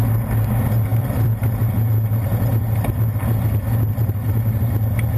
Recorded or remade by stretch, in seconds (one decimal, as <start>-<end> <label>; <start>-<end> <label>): 0.0-0.9 recorded; 0.9-1.4 remade; 1.4-5.2 recorded